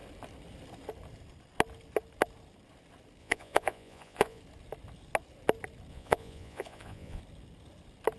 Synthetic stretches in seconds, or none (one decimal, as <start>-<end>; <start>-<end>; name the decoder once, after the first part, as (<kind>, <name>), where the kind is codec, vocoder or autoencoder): 3.2-4.4 (vocoder, Vocos); 5.9-7.2